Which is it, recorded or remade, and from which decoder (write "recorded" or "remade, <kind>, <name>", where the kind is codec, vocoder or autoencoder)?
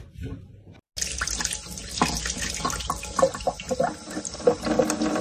recorded